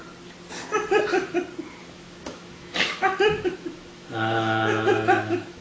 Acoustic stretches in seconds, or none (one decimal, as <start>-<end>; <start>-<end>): 0.0-1.8